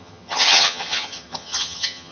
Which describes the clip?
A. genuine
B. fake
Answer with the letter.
B